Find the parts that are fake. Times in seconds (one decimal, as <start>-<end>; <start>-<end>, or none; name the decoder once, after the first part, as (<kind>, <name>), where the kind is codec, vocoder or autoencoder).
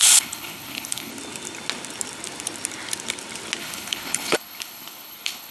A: 0.0-1.1 (codec, HILCodec); 3.6-5.5